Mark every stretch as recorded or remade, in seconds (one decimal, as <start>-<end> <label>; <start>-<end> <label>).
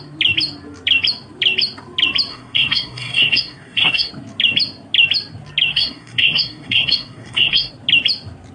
0.0-2.3 recorded; 2.3-4.1 remade; 4.1-5.7 recorded; 5.7-7.7 remade; 7.7-8.5 recorded